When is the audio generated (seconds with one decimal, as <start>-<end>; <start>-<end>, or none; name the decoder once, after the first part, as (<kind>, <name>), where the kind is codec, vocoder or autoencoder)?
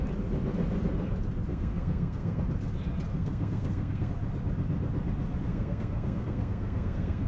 1.5-2.4 (codec, SNAC); 3.1-4.1; 5.5-7.3